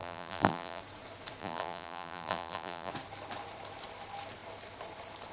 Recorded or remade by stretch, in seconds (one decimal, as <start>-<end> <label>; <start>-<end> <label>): 0.0-0.8 remade; 0.8-1.4 recorded; 1.4-2.9 remade; 2.9-5.3 recorded